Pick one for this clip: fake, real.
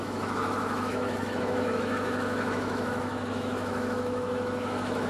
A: fake